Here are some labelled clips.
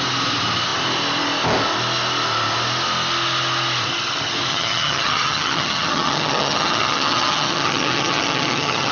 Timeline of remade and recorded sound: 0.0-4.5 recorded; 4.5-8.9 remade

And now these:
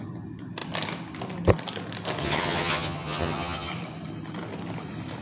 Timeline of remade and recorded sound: 0.0-2.2 recorded; 2.2-3.7 remade; 3.7-5.2 recorded

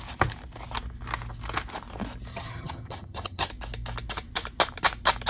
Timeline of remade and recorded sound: 0.0-2.3 recorded; 2.3-3.5 remade; 3.5-5.3 recorded

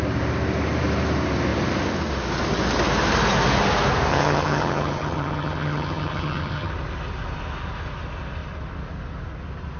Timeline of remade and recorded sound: 0.0-4.1 recorded; 4.1-6.7 remade; 6.7-9.8 recorded

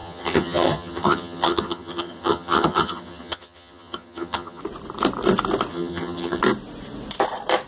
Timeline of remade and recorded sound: 0.0-4.6 remade; 4.6-5.7 recorded; 5.7-6.4 remade; 6.4-7.7 recorded

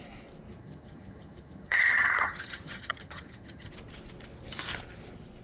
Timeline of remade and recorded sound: 0.0-0.6 recorded; 0.6-3.7 remade; 3.7-5.4 recorded

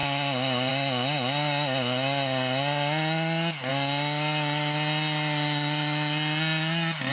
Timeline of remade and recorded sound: 0.0-7.1 recorded